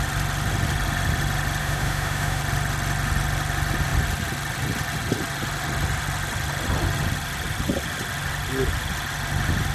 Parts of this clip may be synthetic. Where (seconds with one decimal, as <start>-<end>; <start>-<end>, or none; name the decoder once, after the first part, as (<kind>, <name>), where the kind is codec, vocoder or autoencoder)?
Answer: 1.6-2.4 (autoencoder, DAC-VAE)